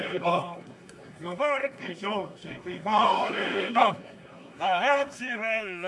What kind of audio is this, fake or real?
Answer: fake